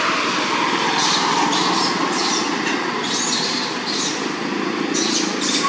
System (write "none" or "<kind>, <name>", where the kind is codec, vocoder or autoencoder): none